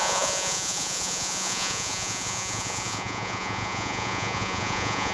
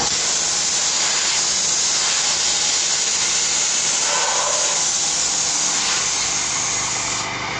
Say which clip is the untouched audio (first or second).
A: second